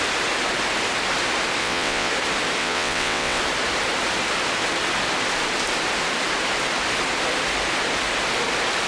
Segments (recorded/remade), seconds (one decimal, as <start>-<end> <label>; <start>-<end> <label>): 0.0-1.6 recorded; 1.6-2.1 remade; 2.1-2.6 recorded; 2.6-3.4 remade; 3.4-8.9 recorded